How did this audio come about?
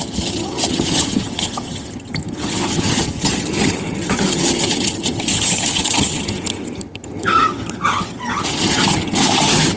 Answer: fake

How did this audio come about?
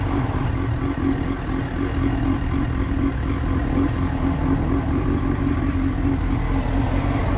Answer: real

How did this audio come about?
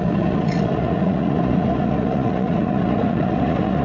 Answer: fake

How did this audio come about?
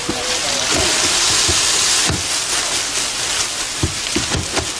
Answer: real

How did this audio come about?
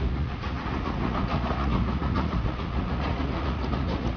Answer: fake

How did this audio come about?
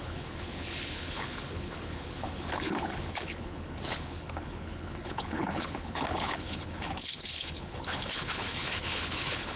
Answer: fake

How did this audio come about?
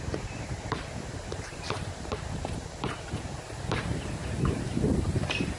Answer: fake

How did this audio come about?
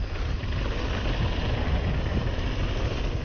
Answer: real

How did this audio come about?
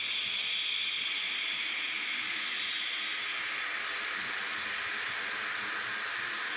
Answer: real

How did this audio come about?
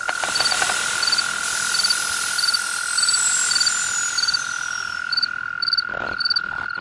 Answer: real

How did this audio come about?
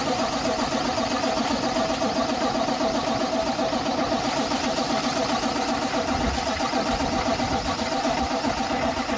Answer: real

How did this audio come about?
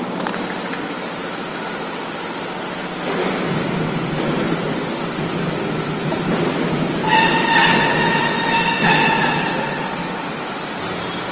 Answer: real